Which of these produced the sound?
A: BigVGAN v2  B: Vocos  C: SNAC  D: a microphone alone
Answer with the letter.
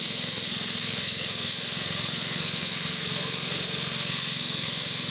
C